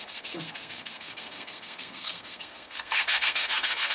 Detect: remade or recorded remade